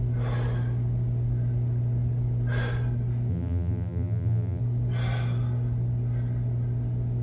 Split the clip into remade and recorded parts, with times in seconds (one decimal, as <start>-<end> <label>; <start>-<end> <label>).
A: 0.0-3.3 recorded; 3.3-4.6 remade; 4.6-7.2 recorded